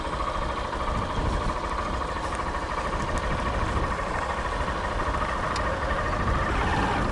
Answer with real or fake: real